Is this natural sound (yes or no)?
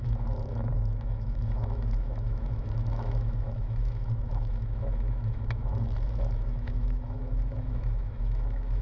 no